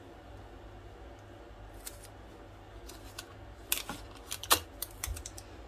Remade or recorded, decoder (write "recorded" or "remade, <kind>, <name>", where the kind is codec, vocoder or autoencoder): recorded